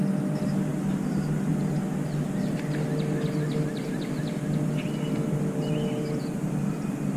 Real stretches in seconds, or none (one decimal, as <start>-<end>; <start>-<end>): 0.0-7.2